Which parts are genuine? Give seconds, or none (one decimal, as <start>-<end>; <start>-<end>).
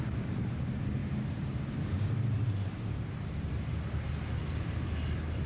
0.0-1.0; 3.5-5.5